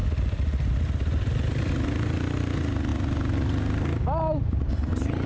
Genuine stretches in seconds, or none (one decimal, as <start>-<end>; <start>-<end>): 0.0-5.3